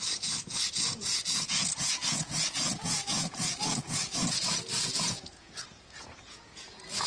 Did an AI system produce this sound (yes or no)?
yes